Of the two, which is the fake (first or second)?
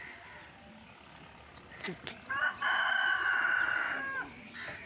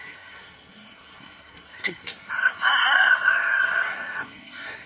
second